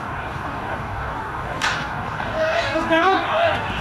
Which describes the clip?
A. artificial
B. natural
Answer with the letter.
A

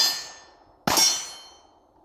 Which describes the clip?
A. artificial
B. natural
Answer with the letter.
B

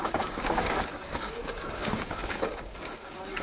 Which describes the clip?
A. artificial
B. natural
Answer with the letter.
A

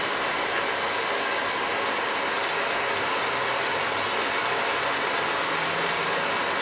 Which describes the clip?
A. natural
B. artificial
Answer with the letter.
A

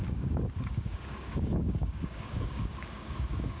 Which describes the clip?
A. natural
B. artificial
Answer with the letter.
B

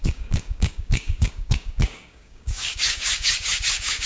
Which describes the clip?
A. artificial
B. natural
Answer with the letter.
A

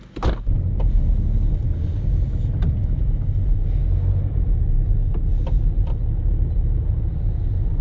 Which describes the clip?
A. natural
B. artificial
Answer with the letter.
A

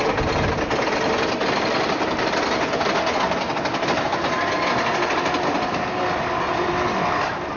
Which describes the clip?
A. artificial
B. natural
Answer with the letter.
B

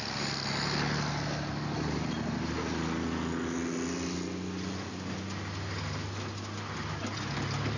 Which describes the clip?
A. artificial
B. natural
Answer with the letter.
B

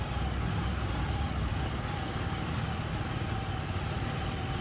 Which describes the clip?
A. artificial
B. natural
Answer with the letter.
B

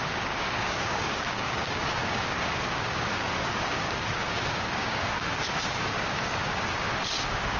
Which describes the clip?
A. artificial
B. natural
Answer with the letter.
A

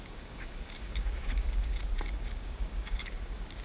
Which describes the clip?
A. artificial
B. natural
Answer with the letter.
A